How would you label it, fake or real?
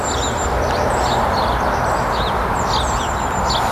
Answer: real